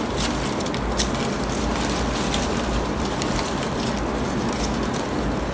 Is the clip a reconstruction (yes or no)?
no